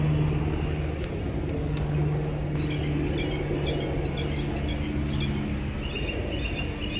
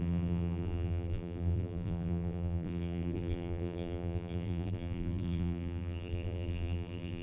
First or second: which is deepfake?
second